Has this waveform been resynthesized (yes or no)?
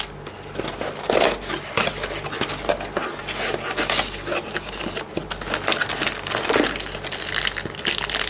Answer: no